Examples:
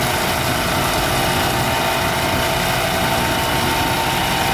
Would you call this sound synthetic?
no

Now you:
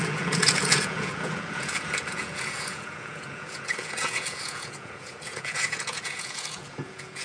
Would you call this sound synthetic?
yes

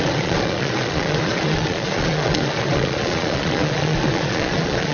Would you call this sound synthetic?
yes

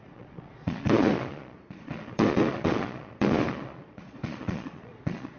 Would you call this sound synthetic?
yes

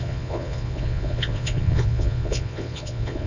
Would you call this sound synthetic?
yes